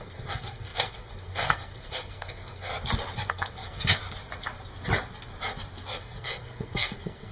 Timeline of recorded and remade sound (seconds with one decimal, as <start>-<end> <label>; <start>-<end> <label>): 0.0-2.7 remade; 2.7-3.3 recorded; 3.3-4.0 remade; 4.0-6.0 recorded; 6.0-7.3 remade

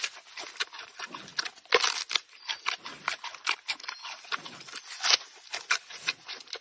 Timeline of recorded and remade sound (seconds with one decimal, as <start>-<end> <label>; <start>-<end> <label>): 0.0-6.6 recorded

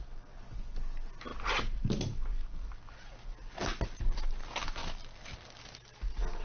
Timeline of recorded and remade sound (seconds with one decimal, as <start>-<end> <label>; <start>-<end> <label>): 0.0-6.4 recorded